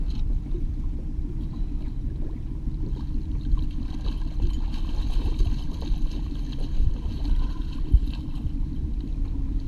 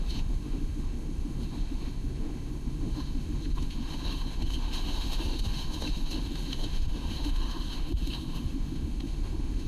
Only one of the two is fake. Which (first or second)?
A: second